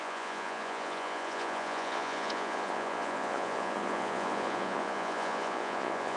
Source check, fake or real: fake